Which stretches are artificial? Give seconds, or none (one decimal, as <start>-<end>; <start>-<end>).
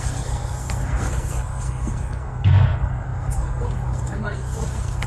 0.0-5.1